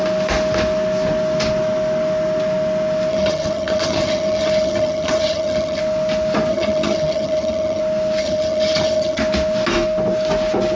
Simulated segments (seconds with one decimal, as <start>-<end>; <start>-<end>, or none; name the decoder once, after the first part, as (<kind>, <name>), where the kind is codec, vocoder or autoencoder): 3.1-5.8 (vocoder, HiFi-GAN); 6.5-7.8; 8.2-9.2